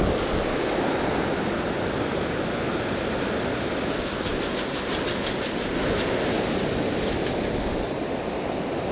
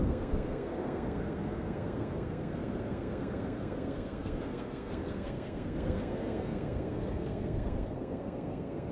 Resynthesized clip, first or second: second